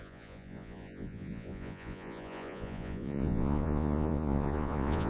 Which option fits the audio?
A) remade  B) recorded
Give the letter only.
A